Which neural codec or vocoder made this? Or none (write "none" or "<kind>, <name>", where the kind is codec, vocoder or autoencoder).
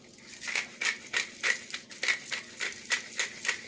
none